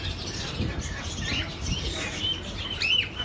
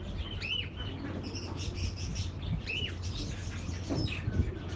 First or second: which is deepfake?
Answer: first